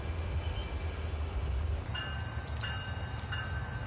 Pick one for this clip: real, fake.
real